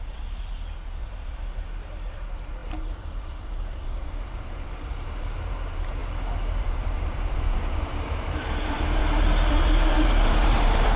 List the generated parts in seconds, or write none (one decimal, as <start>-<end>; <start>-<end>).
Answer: 0.0-6.0; 6.6-9.0; 9.5-11.0